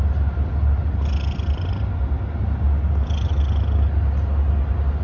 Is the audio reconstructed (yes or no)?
no